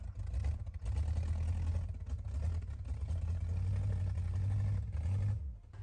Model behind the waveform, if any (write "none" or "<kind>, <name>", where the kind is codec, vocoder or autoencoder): none